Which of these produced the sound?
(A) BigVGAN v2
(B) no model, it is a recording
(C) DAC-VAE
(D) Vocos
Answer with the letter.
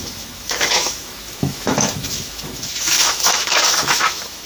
C